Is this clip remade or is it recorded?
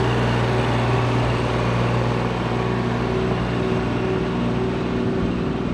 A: recorded